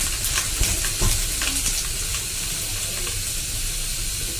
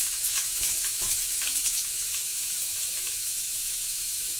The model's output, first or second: second